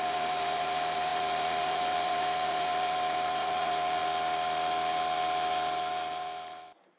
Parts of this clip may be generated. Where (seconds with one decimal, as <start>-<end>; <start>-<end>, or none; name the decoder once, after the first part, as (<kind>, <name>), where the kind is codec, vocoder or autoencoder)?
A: 0.0-4.0 (vocoder, BigVGAN v2)